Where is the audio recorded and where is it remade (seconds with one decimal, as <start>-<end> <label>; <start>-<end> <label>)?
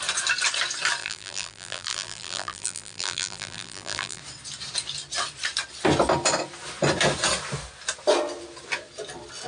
0.0-1.0 recorded; 1.0-4.2 remade; 4.2-9.5 recorded